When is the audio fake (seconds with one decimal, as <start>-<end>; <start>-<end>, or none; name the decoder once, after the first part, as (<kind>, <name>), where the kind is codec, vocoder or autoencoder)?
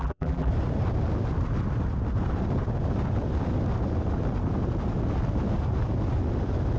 0.0-0.5 (vocoder, BigVGAN v2)